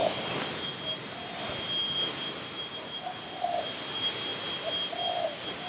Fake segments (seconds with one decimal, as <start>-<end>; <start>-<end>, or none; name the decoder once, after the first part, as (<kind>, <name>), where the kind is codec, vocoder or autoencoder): none